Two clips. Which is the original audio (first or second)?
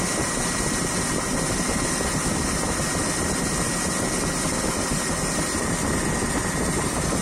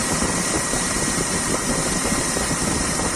first